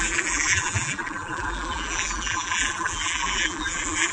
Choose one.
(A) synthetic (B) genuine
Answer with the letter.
A